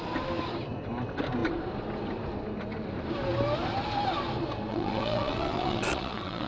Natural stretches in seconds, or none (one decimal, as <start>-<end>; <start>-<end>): 0.0-4.7